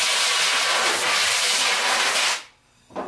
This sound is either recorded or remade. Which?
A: recorded